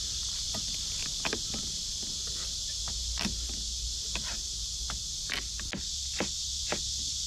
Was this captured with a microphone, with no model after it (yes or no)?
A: yes